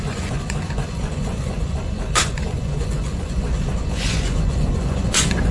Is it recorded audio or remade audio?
remade